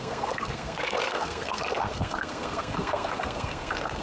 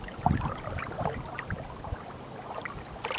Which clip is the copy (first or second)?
first